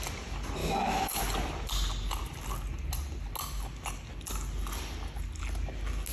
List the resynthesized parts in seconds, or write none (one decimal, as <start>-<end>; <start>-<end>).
0.6-1.2